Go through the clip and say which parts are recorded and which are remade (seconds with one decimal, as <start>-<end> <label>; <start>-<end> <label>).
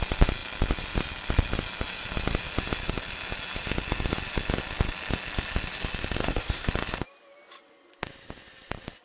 0.0-6.2 recorded; 6.2-6.7 remade; 6.7-9.0 recorded